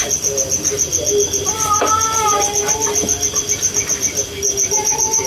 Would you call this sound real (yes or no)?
yes